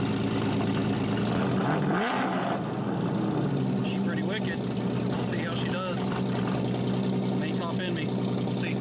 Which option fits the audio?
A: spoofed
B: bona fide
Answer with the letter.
B